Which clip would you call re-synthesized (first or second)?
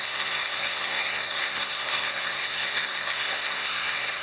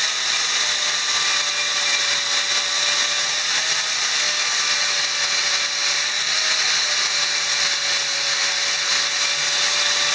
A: first